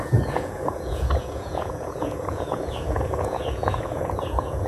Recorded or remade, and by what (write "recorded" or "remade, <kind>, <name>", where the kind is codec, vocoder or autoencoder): remade, vocoder, Vocos